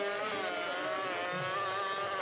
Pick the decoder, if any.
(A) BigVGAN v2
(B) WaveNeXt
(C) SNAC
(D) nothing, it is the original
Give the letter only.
D